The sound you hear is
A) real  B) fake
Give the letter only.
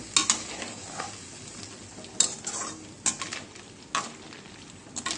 A